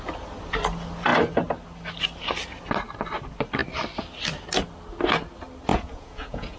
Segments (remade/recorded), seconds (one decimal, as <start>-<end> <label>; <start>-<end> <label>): 0.0-5.7 recorded; 5.7-6.6 remade